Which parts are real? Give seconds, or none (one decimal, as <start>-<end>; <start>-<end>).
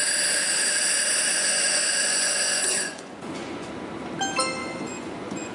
0.0-1.3; 3.7-4.6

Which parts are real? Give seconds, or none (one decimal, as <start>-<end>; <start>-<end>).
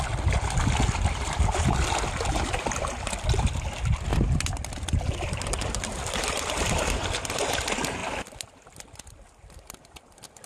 0.0-10.5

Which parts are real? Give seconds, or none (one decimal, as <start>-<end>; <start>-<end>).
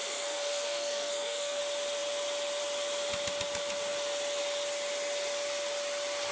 1.6-6.3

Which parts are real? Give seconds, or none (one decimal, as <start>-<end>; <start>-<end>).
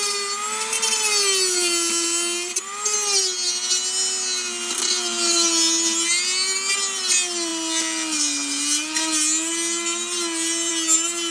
0.0-11.3